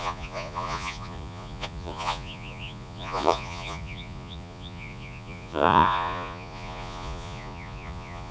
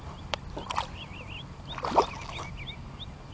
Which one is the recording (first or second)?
second